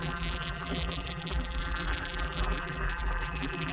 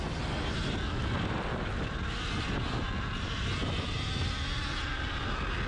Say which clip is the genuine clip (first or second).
second